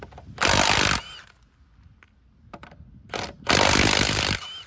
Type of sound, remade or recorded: recorded